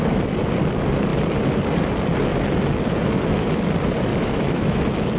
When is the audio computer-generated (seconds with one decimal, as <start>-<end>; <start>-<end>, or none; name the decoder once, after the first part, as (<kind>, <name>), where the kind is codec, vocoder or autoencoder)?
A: 4.1-4.8 (autoencoder, DAC-VAE)